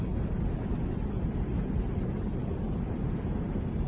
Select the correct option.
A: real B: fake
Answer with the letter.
A